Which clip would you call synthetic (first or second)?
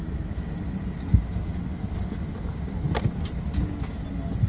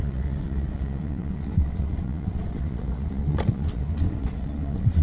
second